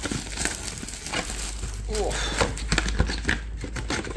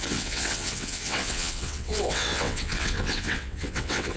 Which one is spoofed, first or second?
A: second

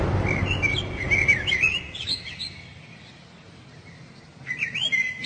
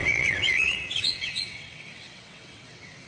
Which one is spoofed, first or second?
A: second